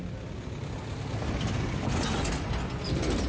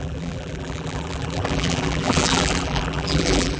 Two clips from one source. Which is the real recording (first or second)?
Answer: first